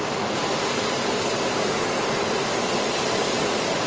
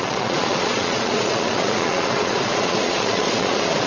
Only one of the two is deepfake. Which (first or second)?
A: second